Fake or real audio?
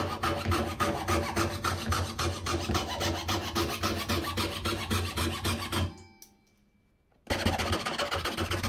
real